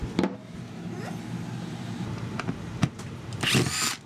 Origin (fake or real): real